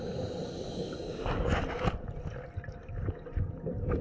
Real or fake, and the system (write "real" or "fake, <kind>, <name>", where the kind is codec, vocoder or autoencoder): real